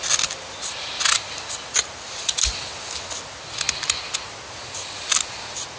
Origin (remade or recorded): recorded